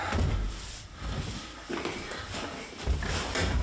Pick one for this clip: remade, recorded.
recorded